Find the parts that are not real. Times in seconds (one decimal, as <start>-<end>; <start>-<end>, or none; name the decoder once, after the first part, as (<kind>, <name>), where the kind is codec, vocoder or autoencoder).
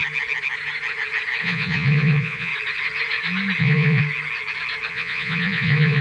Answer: 1.4-2.5 (vocoder, Vocos); 3.6-4.0; 4.9-6.0